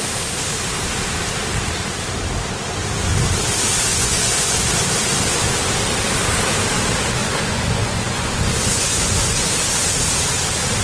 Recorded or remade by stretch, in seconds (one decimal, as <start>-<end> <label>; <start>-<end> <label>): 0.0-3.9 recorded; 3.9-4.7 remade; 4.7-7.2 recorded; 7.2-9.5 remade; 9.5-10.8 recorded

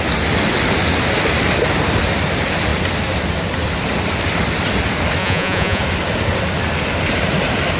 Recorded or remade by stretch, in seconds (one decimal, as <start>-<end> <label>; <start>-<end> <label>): 0.0-5.2 recorded; 5.2-5.8 remade; 5.8-7.8 recorded

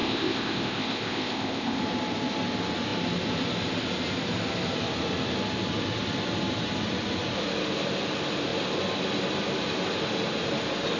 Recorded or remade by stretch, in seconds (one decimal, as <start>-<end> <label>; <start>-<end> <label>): 0.0-1.8 remade; 1.8-11.0 recorded